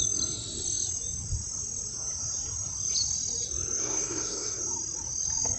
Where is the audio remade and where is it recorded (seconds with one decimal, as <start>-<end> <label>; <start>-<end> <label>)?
0.0-3.8 recorded; 3.8-4.6 remade; 4.6-5.6 recorded